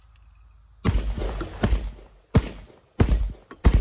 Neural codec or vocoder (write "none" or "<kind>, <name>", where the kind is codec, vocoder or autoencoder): none